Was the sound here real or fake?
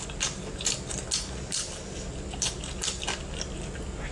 real